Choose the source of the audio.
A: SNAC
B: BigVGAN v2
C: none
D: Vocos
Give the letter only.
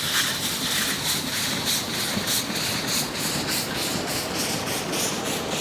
B